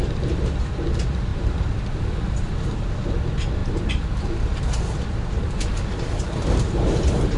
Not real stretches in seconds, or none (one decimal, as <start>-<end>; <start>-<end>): 1.3-2.1; 3.6-7.4